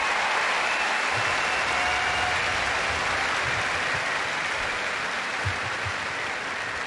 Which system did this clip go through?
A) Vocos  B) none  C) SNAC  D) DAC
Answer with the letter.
B